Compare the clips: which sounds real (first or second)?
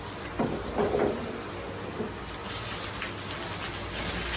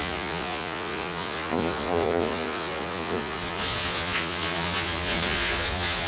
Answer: first